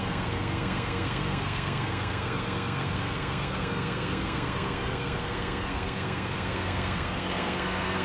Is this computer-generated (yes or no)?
yes